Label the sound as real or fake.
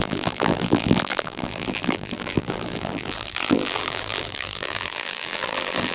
fake